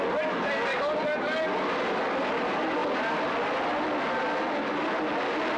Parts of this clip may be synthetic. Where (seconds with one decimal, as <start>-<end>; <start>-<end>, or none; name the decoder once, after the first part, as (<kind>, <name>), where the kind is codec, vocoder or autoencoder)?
none